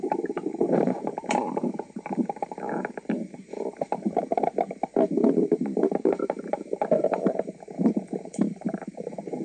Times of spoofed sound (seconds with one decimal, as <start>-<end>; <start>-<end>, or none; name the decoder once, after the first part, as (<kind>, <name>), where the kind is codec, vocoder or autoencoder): 0.0-4.5 (vocoder, BigVGAN v2); 5.3-9.4